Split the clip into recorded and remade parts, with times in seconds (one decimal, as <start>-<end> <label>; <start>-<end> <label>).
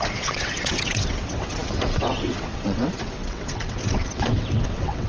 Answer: 0.0-5.1 remade